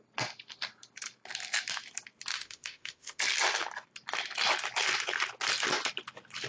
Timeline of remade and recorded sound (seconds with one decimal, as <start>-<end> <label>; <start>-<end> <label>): 0.0-2.3 recorded; 2.3-3.2 remade; 3.2-6.5 recorded